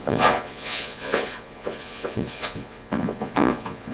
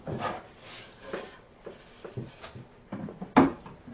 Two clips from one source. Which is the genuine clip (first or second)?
second